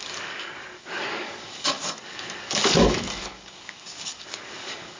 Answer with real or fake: fake